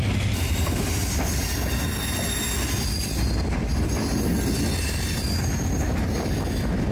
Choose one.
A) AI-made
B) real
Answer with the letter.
B